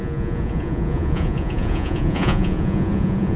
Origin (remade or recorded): remade